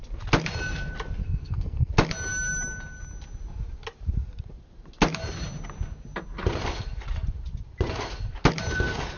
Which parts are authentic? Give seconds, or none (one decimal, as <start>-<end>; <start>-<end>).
0.0-1.2; 1.9-9.2

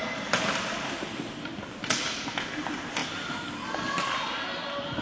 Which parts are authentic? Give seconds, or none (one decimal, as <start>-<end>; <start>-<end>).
0.0-5.0

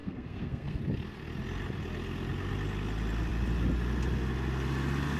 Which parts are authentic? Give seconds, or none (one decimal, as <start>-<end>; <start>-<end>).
0.8-5.2

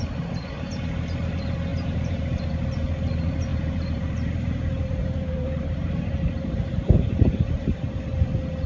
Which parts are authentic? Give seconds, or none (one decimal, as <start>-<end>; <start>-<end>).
0.0-1.7; 2.4-3.5; 7.8-8.7

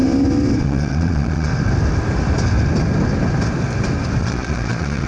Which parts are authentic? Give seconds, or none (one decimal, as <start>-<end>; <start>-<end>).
0.0-0.6; 1.5-4.2

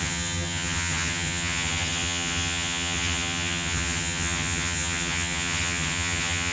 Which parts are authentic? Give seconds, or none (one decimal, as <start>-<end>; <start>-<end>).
none